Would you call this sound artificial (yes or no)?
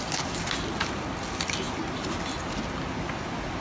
no